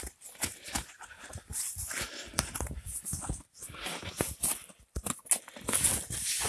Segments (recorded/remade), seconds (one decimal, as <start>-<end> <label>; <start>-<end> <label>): 0.0-1.5 recorded; 1.5-3.2 remade; 3.2-6.5 recorded